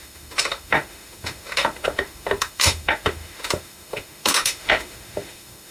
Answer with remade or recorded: remade